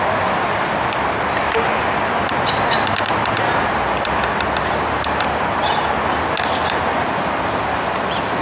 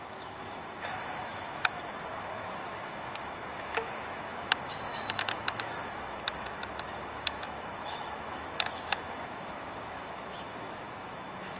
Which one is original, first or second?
first